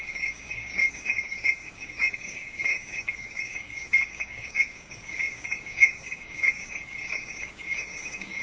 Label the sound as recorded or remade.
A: remade